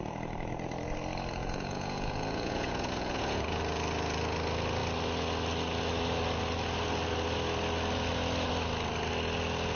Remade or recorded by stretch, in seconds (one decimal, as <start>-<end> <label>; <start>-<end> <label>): 0.0-1.4 recorded; 1.4-3.6 remade; 3.6-9.8 recorded